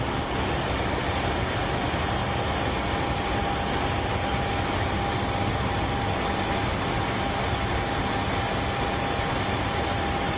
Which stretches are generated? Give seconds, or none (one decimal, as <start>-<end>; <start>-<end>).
none